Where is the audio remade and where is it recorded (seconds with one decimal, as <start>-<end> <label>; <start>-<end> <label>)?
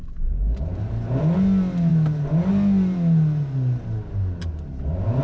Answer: 0.0-5.2 recorded